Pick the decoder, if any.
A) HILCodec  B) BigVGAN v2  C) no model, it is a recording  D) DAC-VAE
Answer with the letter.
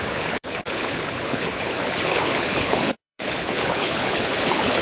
A